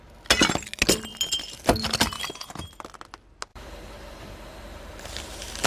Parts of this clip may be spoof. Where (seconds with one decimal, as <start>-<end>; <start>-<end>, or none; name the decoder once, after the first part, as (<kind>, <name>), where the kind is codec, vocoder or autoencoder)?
3.5-5.7 (vocoder, BigVGAN v2)